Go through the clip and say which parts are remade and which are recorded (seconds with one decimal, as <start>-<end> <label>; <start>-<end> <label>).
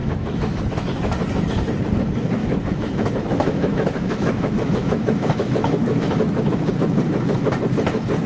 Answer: 0.0-0.6 remade; 0.6-2.4 recorded; 2.4-6.7 remade; 6.7-8.3 recorded